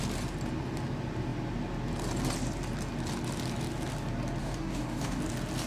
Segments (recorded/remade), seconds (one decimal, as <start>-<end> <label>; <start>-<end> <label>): 0.0-4.4 recorded; 4.4-5.2 remade; 5.2-5.7 recorded